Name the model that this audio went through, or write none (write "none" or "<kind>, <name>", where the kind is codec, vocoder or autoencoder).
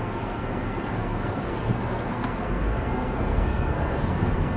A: codec, SNAC